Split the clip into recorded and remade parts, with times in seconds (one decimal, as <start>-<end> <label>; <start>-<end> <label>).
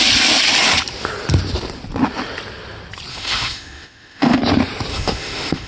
0.0-3.1 recorded; 3.1-4.4 remade; 4.4-4.9 recorded; 4.9-5.7 remade